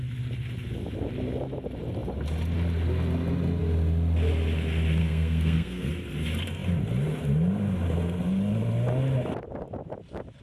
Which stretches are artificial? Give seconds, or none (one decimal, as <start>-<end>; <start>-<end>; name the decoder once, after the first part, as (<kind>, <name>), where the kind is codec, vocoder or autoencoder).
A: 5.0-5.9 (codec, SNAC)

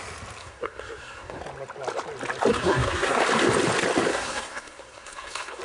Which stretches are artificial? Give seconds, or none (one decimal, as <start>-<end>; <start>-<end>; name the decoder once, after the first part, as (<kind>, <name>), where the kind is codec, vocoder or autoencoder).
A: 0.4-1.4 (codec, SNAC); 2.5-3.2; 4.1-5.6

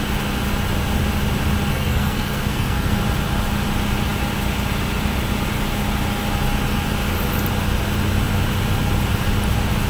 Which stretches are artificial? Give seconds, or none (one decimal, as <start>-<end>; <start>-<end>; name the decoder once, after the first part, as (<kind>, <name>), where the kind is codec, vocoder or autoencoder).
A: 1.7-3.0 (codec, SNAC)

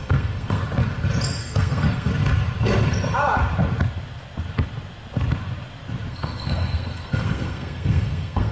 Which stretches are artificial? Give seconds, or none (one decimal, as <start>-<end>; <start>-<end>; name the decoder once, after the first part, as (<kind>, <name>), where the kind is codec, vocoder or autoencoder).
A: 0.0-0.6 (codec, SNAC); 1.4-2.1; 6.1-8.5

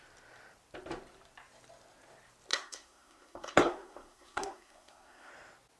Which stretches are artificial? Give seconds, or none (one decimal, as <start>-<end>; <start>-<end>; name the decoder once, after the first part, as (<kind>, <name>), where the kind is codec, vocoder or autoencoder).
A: 2.5-5.3 (codec, SNAC)

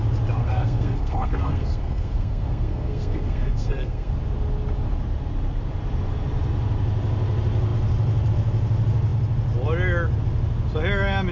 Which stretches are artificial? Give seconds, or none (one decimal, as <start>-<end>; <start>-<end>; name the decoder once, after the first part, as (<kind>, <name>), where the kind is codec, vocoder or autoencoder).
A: 0.4-4.1 (codec, SNAC)